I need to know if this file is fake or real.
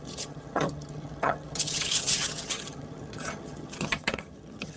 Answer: fake